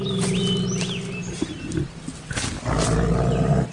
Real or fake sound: real